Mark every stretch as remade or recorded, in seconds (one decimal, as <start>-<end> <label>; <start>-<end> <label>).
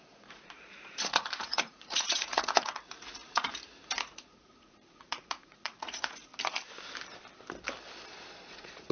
0.0-3.5 remade; 3.5-4.0 recorded; 4.0-6.3 remade; 6.3-8.4 recorded; 8.4-8.9 remade